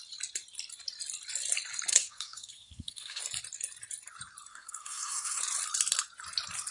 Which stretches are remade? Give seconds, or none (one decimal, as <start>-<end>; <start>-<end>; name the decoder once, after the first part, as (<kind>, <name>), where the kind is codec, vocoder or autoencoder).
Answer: 1.9-3.2 (codec, SNAC); 4.5-5.4